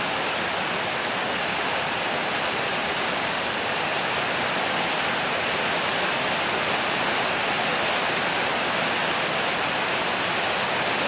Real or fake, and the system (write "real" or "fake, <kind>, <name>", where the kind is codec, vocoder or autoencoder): real